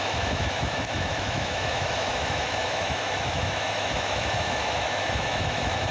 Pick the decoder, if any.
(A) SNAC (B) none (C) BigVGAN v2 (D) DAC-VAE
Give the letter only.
D